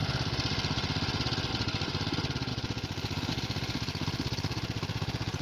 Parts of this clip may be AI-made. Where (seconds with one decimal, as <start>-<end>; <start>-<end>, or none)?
1.5-5.4